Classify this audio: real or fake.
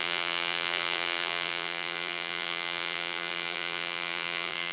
fake